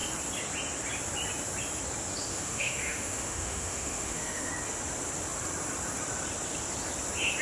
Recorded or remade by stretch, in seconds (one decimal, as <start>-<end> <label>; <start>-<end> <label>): 0.0-2.3 recorded; 2.3-4.5 remade; 4.5-7.4 recorded